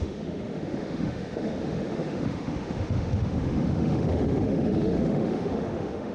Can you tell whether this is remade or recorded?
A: remade